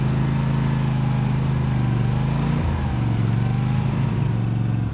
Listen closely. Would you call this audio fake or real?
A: real